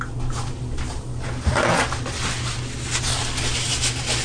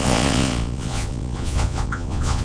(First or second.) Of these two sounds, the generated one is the second